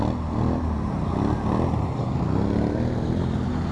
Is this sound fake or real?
real